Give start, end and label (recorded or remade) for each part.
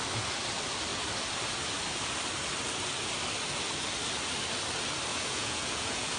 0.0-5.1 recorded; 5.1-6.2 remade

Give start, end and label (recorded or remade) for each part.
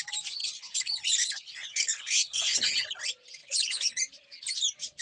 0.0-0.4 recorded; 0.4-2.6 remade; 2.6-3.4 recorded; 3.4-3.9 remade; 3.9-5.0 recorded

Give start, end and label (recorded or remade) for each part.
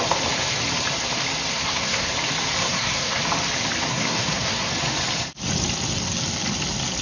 0.0-1.5 recorded; 1.5-2.1 remade; 2.1-2.6 recorded; 2.6-3.2 remade; 3.2-3.9 recorded; 3.9-4.7 remade; 4.7-7.0 recorded